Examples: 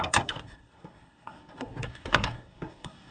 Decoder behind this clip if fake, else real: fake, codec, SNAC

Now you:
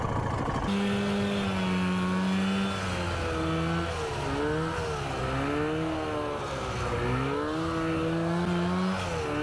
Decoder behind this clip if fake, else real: real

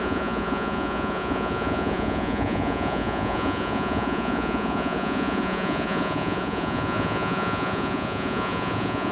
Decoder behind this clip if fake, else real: fake, vocoder, Vocos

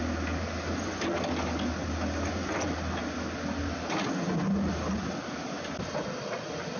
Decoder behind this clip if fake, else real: real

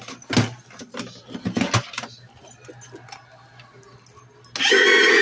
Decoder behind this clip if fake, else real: real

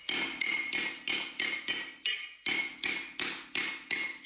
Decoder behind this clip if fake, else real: real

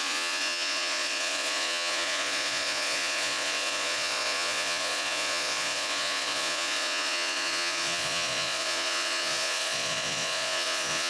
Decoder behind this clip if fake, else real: fake, vocoder, Vocos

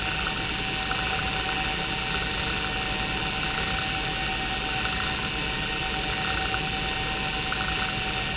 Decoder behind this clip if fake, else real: real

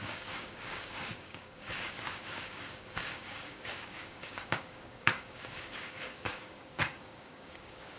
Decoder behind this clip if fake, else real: fake, codec, DAC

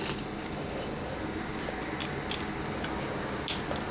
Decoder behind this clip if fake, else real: real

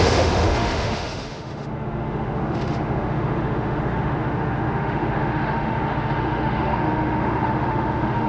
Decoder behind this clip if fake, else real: fake, autoencoder, DAC-VAE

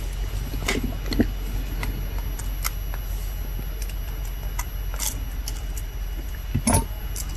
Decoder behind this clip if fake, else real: real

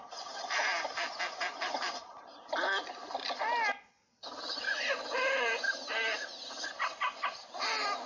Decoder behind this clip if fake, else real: real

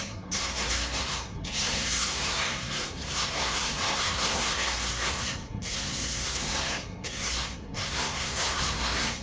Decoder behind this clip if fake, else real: fake, codec, SNAC